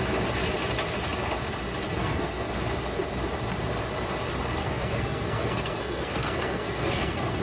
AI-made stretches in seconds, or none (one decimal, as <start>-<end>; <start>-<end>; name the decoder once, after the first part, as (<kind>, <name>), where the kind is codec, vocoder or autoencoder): 2.0-2.5 (codec, SNAC); 4.6-7.4